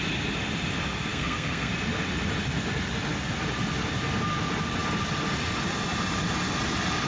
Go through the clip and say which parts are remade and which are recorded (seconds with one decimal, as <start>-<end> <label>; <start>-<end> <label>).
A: 0.0-1.1 recorded; 1.1-1.7 remade; 1.7-7.1 recorded